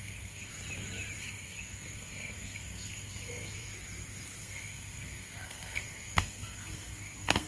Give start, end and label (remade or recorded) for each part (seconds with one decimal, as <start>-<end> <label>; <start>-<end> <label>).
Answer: 0.0-0.5 remade; 0.5-1.2 recorded; 1.2-3.7 remade; 3.7-4.4 recorded; 4.4-7.5 remade